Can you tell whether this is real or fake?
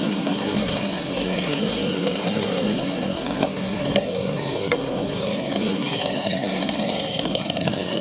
fake